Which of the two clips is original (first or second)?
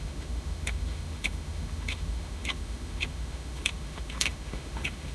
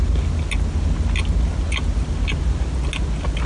second